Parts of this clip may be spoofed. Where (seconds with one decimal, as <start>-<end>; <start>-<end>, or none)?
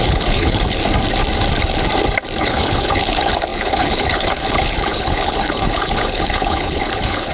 0.0-0.8; 2.4-7.3